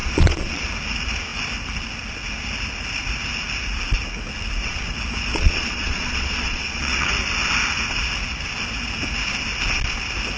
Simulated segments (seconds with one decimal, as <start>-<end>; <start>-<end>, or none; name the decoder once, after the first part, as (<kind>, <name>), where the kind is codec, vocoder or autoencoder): 0.0-0.7 (vocoder, Vocos); 5.3-7.1